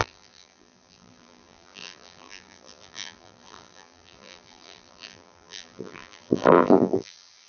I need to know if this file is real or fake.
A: fake